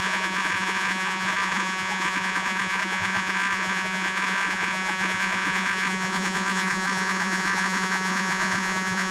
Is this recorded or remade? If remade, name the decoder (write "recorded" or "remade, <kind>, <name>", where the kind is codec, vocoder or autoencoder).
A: remade, vocoder, Vocos